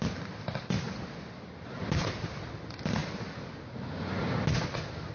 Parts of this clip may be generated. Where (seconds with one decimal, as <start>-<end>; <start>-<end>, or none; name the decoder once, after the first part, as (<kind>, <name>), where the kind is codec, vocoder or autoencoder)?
none

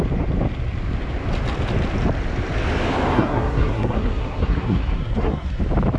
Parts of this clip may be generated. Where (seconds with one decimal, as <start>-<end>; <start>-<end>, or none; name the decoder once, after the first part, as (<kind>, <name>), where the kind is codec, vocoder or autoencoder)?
3.1-5.6 (codec, SNAC)

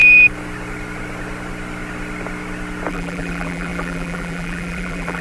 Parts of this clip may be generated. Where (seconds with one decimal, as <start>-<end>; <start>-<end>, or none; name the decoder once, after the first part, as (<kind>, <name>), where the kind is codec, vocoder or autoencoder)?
2.9-5.2 (vocoder, BigVGAN v2)

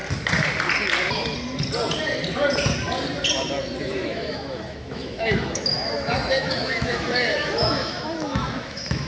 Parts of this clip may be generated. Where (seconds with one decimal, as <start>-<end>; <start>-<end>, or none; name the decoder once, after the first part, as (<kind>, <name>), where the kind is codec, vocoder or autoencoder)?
3.8-9.1 (autoencoder, DAC-VAE)

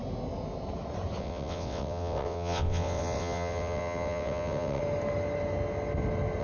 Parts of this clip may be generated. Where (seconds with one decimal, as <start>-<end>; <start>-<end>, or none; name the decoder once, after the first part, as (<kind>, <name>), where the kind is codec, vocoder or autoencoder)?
1.2-4.8 (vocoder, WaveNeXt)